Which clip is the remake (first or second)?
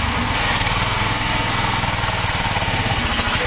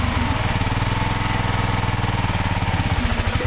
first